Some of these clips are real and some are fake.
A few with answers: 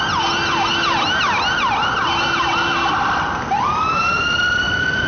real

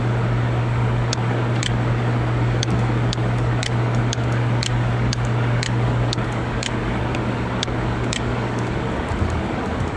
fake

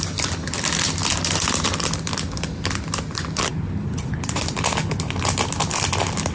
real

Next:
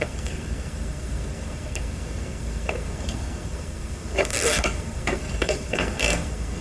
fake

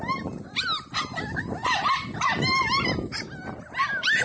real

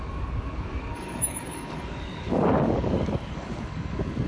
fake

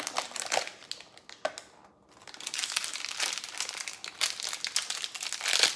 real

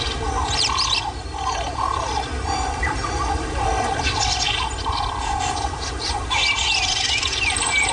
real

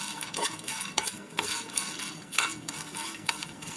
fake